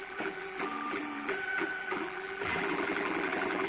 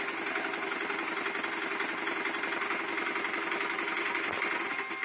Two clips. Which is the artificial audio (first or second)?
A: first